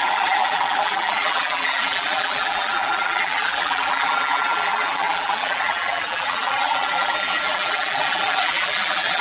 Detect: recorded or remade remade